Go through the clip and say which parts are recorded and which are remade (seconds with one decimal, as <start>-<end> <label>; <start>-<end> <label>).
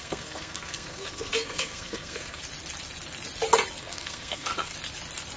0.0-2.4 remade; 2.4-3.8 recorded; 3.8-4.7 remade; 4.7-5.4 recorded